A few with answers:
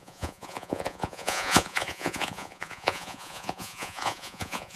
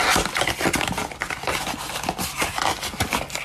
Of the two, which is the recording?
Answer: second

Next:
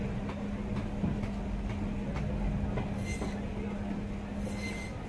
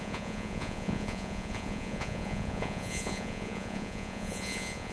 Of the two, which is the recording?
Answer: first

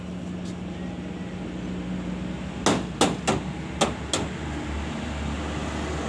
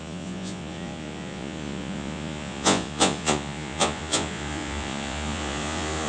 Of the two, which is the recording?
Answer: first